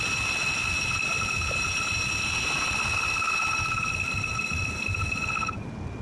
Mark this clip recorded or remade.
recorded